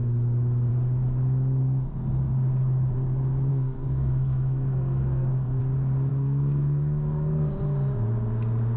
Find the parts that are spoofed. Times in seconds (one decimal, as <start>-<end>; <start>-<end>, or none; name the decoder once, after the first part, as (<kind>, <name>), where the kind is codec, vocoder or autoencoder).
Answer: 3.5-5.6 (codec, SNAC); 6.1-7.5